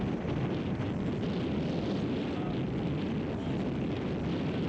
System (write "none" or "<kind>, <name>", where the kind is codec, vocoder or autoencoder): none